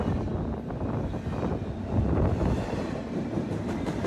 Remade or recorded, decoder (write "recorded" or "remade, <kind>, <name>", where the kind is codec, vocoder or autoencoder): recorded